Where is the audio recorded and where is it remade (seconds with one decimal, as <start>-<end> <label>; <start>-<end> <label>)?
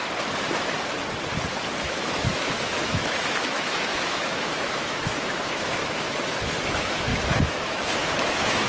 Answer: 0.0-1.8 recorded; 1.8-8.7 remade